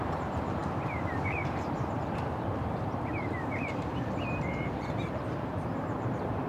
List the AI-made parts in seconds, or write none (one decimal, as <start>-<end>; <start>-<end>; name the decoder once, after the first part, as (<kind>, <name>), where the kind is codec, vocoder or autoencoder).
0.0-6.5 (vocoder, BigVGAN v2)